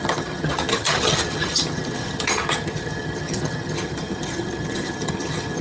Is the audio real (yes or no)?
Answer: no